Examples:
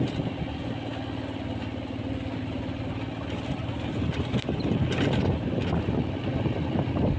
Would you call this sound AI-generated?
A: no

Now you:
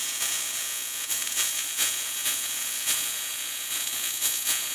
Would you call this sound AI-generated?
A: yes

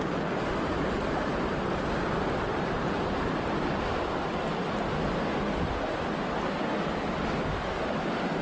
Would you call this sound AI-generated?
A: no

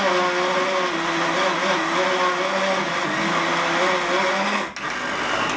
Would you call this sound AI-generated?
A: no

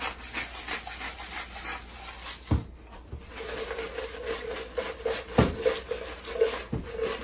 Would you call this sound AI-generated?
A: no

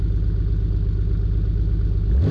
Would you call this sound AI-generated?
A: no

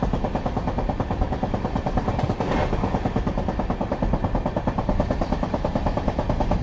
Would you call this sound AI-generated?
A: no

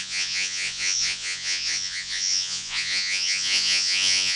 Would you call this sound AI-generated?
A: yes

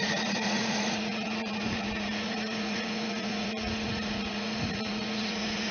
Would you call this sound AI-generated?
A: yes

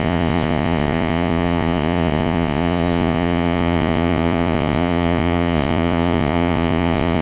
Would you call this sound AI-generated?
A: yes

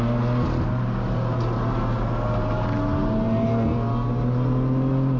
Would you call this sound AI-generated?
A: no